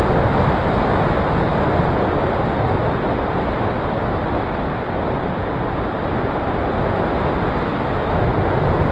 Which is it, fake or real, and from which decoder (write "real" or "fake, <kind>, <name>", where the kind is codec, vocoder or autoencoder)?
real